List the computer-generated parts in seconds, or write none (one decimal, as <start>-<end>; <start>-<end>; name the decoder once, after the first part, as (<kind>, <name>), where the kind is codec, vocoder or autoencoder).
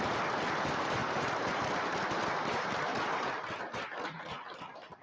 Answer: 1.0-1.6 (vocoder, BigVGAN v2)